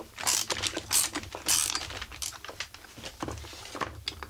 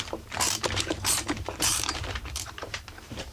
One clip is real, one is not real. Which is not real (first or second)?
second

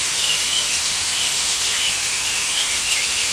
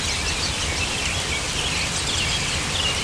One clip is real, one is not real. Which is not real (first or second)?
first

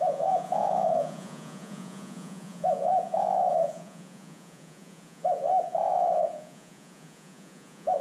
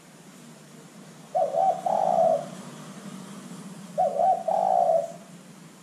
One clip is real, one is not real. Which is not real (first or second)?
first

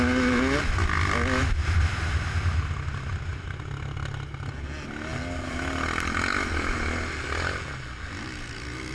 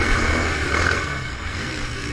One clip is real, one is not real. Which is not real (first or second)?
second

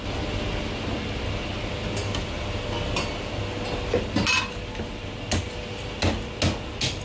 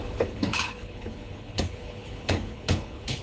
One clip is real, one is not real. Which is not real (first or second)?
second